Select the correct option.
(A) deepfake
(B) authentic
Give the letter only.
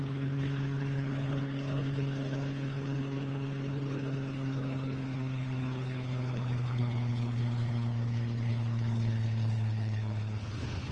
A